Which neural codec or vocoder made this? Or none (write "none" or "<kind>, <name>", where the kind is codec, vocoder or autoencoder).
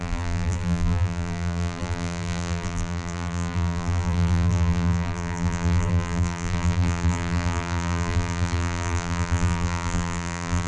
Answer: vocoder, BigVGAN v2